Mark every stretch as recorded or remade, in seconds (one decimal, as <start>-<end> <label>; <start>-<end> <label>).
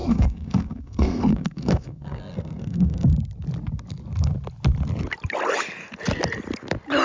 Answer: 0.0-3.1 remade; 3.1-7.0 recorded